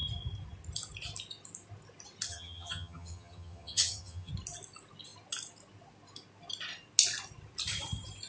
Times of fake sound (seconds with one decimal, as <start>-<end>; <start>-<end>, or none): 2.3-4.3